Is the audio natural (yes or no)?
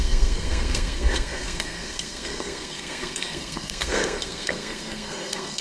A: no